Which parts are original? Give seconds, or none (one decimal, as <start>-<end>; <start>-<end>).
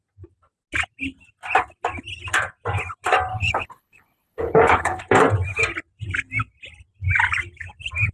0.0-3.3; 5.0-8.1